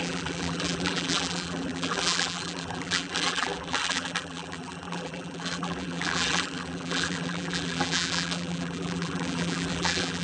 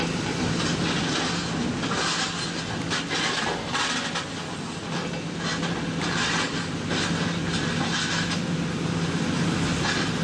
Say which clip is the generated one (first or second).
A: first